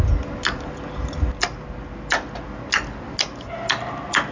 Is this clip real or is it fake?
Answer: real